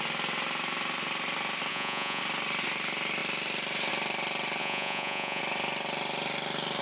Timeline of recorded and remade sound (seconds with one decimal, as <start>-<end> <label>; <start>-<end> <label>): 0.0-1.7 recorded; 1.7-2.2 remade; 2.2-4.6 recorded; 4.6-5.4 remade; 5.4-6.8 recorded